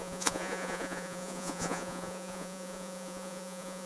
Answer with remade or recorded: remade